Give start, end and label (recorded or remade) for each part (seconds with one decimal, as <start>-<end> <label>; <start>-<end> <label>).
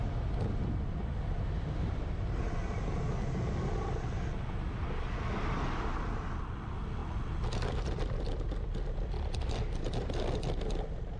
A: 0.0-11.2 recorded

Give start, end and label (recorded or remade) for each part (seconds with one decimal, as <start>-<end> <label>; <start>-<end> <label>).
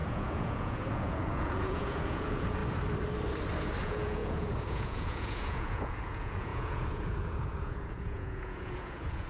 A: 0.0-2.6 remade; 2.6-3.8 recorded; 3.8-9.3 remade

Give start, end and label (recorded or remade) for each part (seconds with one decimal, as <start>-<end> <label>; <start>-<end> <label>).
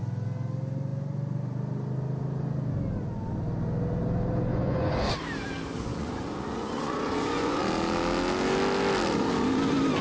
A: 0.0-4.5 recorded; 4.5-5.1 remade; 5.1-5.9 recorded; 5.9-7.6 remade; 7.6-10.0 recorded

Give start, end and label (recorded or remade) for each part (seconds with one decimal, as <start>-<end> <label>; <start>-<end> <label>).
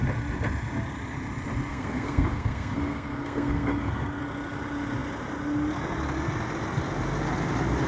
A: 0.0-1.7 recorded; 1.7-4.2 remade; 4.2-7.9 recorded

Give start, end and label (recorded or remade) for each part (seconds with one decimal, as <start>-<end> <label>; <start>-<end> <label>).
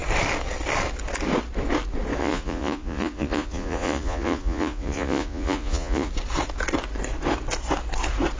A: 0.0-2.2 recorded; 2.2-6.1 remade; 6.1-8.4 recorded